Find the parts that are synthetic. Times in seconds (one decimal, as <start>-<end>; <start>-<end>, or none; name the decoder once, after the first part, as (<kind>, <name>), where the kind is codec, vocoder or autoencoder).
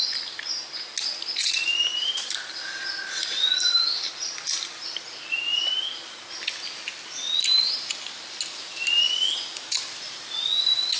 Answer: none